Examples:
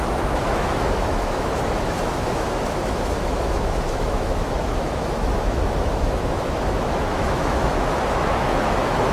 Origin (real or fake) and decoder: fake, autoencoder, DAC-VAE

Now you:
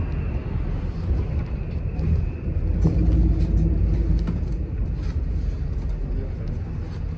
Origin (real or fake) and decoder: real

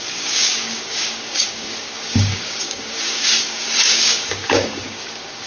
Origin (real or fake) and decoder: fake, codec, DAC